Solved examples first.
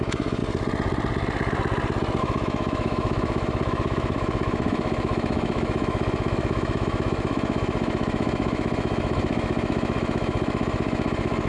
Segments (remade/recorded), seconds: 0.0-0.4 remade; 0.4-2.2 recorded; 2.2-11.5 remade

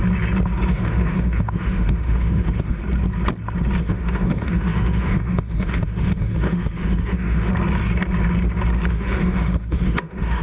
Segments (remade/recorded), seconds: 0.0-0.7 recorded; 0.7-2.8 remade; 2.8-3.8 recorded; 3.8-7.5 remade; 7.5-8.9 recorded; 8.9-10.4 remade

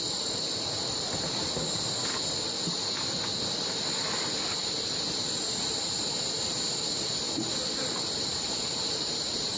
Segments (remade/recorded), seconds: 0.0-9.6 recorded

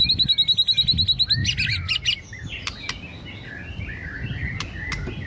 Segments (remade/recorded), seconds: 0.0-5.3 recorded

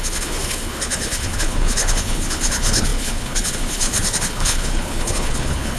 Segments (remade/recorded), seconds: 0.0-5.8 remade

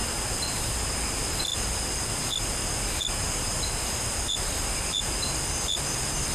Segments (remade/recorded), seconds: 0.0-6.3 recorded

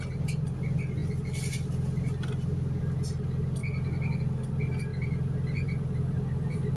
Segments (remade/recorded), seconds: 0.0-3.6 recorded; 3.6-4.2 remade; 4.2-4.9 recorded; 4.9-6.8 remade